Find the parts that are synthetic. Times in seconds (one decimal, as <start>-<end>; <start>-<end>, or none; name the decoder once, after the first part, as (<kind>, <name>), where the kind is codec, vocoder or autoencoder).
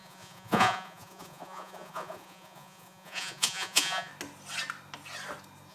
0.0-4.1 (vocoder, Vocos)